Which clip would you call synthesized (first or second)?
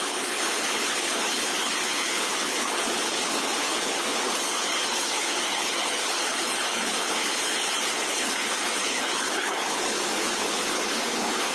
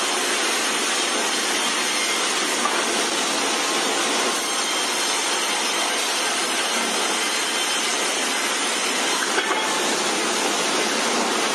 first